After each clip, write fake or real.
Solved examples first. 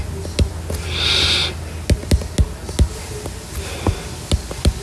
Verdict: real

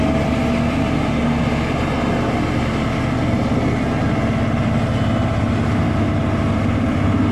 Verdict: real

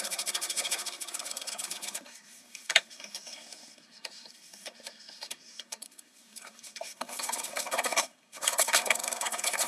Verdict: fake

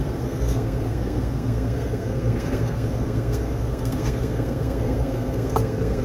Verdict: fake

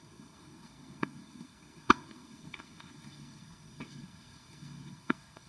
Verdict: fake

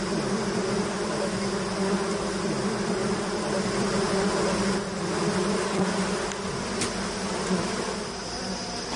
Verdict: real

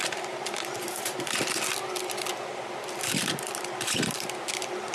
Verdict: real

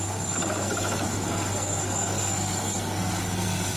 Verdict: fake